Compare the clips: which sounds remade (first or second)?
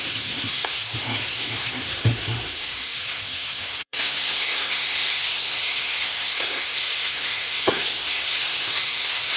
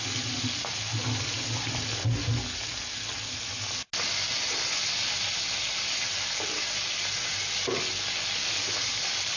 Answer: first